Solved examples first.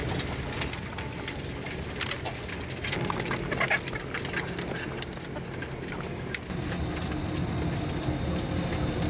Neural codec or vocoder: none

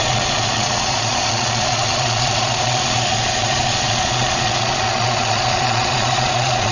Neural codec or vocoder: vocoder, Vocos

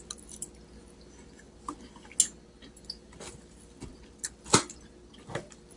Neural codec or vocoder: none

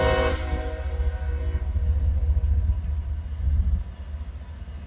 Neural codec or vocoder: none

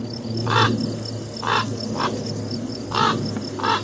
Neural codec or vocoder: none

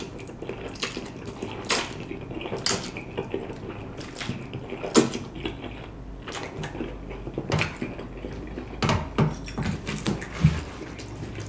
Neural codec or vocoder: none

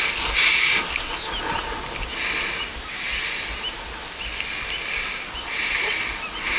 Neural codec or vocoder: none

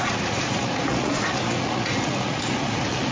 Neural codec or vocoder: vocoder, Vocos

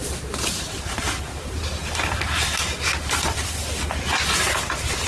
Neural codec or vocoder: none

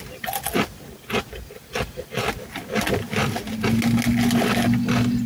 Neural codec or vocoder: none